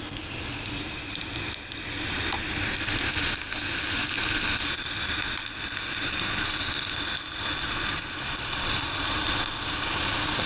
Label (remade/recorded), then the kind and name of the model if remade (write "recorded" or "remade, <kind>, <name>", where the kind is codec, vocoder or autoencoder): recorded